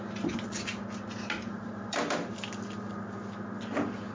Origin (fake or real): real